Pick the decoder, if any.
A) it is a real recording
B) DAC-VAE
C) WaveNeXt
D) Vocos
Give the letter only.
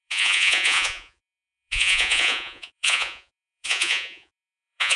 D